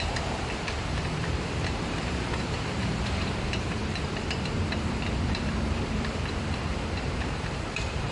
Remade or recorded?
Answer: remade